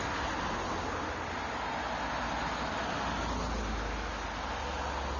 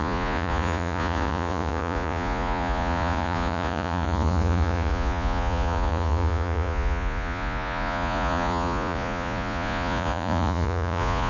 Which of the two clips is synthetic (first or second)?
second